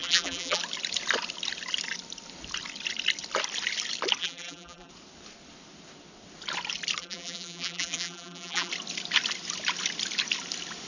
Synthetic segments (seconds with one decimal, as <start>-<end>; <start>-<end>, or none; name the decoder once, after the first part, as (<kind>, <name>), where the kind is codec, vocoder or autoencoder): 0.0-0.6 (vocoder, BigVGAN v2); 4.2-4.9; 7.0-8.7